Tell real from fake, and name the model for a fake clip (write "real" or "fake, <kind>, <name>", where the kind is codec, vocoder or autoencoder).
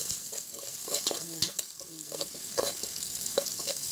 fake, codec, SNAC